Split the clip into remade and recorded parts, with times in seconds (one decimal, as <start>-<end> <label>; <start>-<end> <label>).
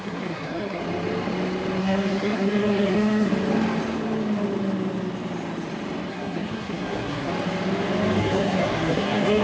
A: 0.0-0.8 remade; 0.8-1.8 recorded; 1.8-3.3 remade; 3.3-6.1 recorded; 6.1-7.3 remade; 7.3-8.2 recorded; 8.2-9.4 remade